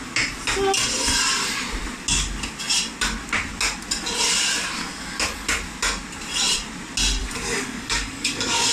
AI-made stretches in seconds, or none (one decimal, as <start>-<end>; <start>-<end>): 7.2-8.7